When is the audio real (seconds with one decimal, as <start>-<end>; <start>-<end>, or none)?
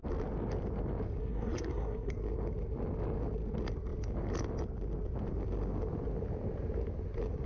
0.0-1.2; 2.1-7.5